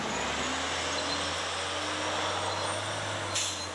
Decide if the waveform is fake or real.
real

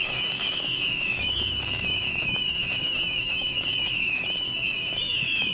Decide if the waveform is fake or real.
fake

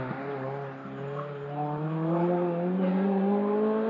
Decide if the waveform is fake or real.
real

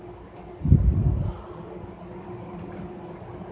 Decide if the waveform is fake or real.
real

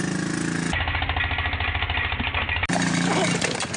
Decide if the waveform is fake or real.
real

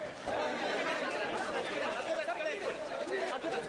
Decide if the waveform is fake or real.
real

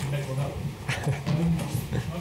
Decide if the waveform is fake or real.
real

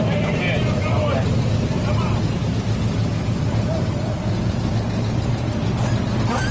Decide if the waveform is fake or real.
real